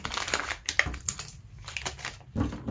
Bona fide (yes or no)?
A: yes